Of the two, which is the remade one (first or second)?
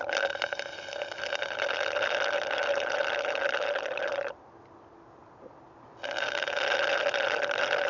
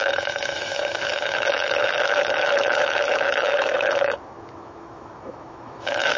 second